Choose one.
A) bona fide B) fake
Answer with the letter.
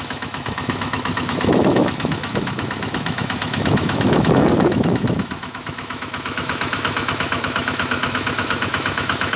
B